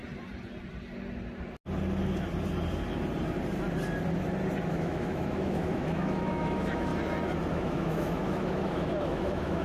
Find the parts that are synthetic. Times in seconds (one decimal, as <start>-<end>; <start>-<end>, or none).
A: 4.7-6.9; 7.5-9.6